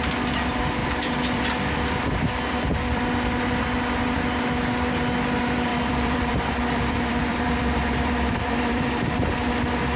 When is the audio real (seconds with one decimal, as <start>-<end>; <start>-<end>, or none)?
0.0-0.8; 3.0-5.7; 9.1-10.0